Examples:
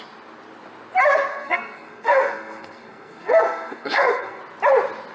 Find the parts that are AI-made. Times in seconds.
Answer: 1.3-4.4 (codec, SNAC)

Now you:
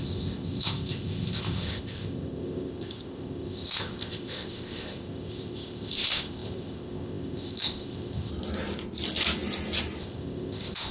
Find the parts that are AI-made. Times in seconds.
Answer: 0.0-8.3 (codec, ZipCodec); 10.0-10.9

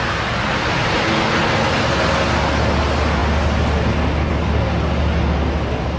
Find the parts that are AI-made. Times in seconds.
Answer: none

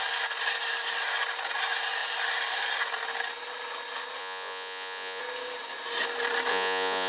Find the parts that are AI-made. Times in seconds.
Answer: 4.2-5.2 (vocoder, Vocos); 6.5-7.1

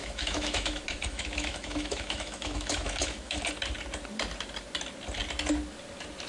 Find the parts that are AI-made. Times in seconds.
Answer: 0.0-3.4 (autoencoder, DAC-VAE)

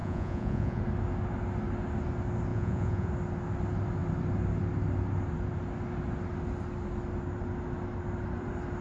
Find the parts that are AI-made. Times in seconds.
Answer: 0.0-0.8 (vocoder, Vocos); 2.5-3.1

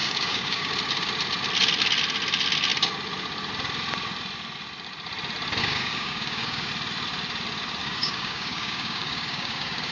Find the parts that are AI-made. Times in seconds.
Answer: 0.0-0.7 (codec, DAC); 5.6-6.7; 7.8-9.9